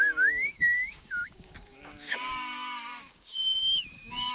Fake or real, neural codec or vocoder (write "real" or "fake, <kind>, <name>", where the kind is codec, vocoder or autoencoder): fake, codec, DAC